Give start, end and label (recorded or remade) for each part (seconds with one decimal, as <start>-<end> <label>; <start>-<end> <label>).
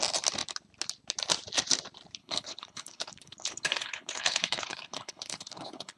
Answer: 0.0-2.2 recorded; 2.2-6.0 remade